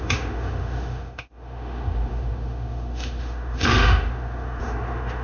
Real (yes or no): no